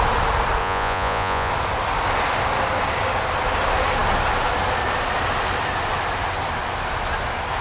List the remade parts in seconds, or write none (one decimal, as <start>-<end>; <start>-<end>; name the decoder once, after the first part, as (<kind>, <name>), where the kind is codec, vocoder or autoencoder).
0.6-1.5 (vocoder, Vocos)